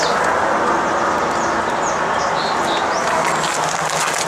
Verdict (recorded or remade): recorded